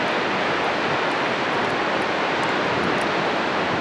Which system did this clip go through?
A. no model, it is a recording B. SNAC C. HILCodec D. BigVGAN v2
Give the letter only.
A